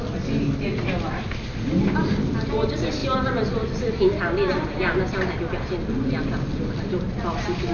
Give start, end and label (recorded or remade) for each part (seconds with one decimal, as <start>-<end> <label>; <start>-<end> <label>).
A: 0.0-7.7 recorded